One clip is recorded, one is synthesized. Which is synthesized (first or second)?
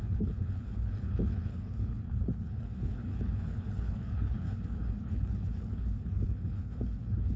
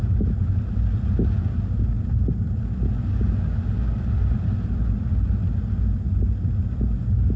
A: first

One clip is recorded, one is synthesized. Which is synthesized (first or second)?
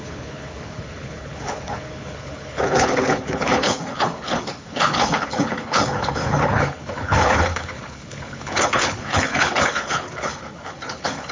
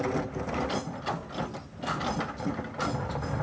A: first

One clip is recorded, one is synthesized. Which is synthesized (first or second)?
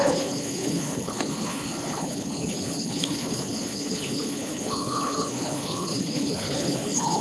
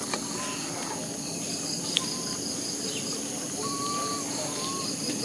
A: first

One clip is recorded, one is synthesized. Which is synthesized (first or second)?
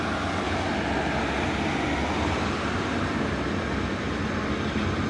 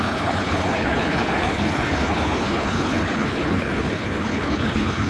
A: second